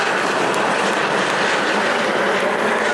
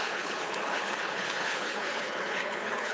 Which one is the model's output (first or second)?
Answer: second